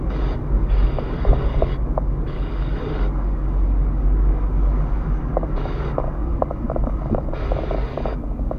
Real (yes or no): no